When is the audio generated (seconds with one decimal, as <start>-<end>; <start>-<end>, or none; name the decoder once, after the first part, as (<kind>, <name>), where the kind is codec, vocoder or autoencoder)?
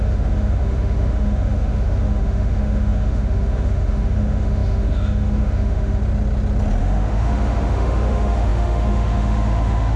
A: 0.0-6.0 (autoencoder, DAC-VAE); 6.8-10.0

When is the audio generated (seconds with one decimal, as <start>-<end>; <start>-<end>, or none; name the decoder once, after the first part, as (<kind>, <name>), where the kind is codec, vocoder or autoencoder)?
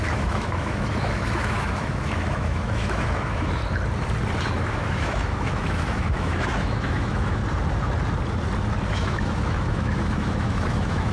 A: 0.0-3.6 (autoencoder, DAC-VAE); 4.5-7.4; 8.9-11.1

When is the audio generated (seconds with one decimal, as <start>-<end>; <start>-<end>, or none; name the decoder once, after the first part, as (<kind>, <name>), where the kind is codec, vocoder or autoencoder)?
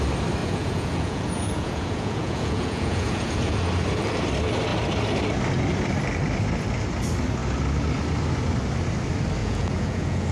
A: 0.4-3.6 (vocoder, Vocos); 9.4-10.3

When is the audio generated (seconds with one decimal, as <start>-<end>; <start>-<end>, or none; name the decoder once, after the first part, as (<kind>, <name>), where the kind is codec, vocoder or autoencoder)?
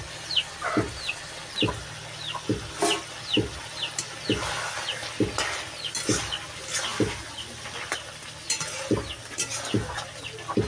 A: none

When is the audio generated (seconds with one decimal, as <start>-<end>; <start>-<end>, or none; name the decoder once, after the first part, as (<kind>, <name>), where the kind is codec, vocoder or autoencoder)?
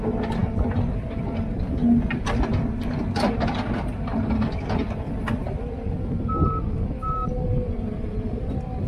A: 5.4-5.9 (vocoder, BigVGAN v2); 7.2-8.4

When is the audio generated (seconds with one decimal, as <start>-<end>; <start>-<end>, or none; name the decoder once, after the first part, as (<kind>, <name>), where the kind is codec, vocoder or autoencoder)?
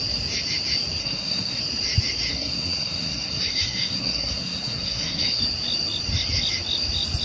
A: 1.0-1.6 (codec, SNAC); 2.3-5.4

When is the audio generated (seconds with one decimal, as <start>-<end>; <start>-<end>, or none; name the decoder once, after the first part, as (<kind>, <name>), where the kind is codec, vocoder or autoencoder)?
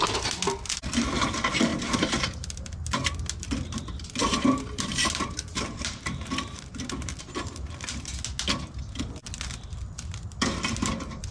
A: 1.7-2.4 (vocoder, BigVGAN v2); 4.2-7.1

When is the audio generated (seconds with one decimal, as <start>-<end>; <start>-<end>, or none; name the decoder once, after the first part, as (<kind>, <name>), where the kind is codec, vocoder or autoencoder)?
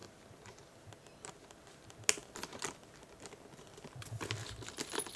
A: 2.2-4.2 (vocoder, BigVGAN v2)